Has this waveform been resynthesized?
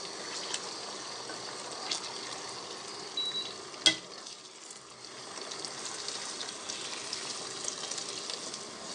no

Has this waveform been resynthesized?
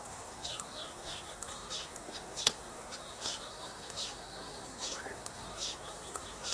yes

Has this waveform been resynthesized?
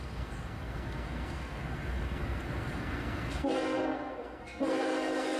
yes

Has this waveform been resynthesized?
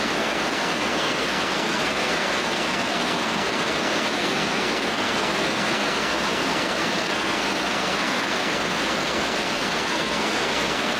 yes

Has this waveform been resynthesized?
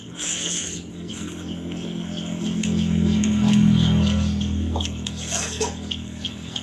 yes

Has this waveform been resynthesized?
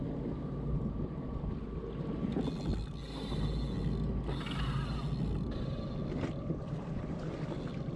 no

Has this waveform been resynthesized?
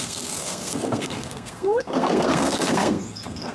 yes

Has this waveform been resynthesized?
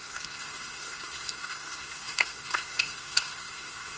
yes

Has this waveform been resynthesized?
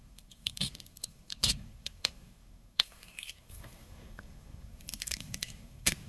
yes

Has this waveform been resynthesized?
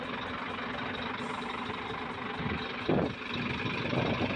no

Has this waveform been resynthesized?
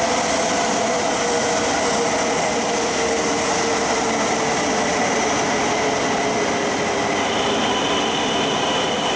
no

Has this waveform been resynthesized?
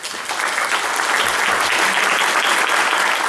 no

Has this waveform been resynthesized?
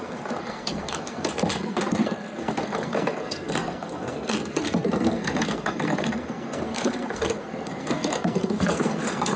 yes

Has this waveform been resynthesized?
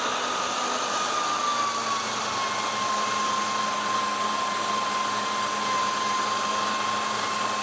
no